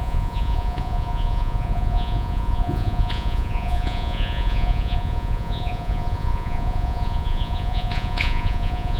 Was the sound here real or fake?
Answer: fake